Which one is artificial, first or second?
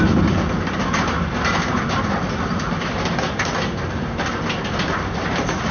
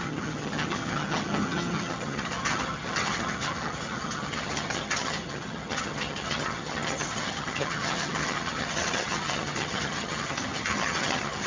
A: second